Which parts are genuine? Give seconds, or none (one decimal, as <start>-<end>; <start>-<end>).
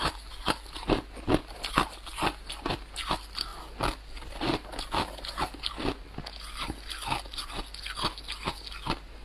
0.0-9.2